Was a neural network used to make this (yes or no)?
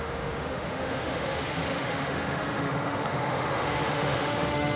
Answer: yes